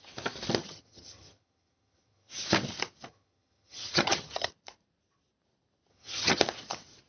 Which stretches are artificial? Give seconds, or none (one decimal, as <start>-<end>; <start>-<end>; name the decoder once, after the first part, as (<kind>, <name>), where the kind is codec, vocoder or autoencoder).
0.6-2.3 (vocoder, HiFi-GAN); 3.1-4.5; 5.9-6.4